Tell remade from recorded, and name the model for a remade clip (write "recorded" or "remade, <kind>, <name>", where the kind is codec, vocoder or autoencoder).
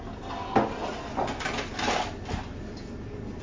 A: recorded